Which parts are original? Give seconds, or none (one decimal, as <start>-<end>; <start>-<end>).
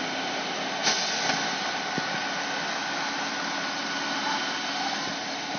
0.0-5.6